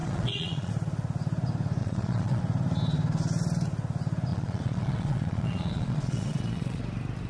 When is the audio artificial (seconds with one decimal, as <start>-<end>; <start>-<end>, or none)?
0.0-0.7; 1.8-2.4; 4.3-6.8